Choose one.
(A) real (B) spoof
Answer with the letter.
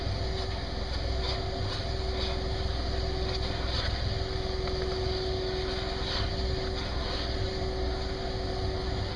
A